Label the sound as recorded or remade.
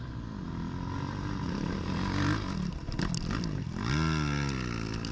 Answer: recorded